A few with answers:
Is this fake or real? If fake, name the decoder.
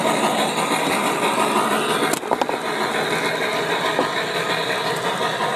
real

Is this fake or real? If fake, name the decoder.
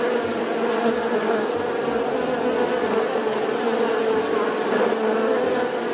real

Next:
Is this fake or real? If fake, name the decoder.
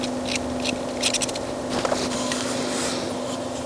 real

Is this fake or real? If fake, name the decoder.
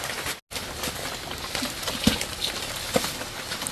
real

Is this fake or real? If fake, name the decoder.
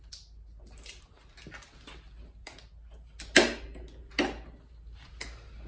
real